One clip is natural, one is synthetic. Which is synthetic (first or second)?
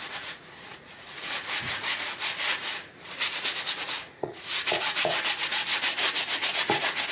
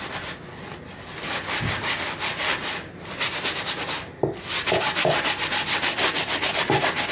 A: first